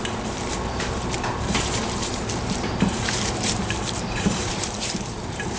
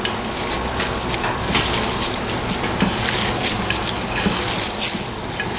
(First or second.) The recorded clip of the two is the second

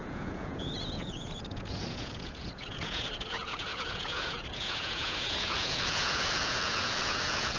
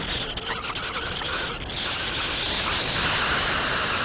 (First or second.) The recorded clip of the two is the second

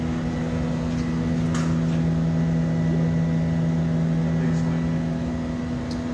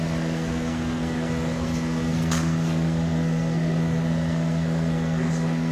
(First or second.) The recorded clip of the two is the first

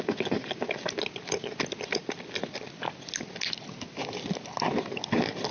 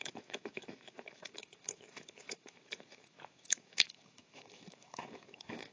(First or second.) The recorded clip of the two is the first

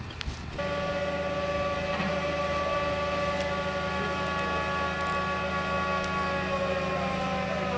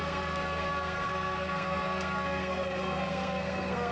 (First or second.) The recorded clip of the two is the first